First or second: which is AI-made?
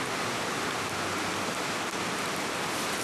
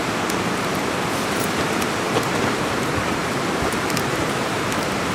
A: second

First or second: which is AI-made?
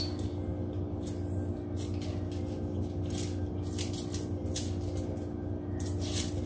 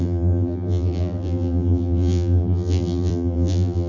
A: second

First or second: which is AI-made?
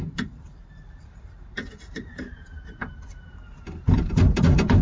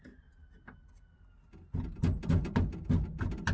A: first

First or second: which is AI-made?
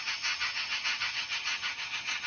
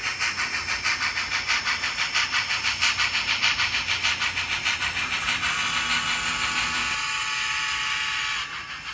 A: first